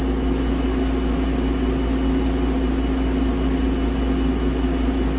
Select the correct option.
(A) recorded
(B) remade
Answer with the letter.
A